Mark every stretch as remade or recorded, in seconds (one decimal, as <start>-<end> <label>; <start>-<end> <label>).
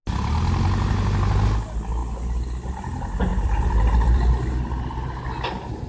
0.0-3.3 recorded; 3.3-4.3 remade; 4.3-5.9 recorded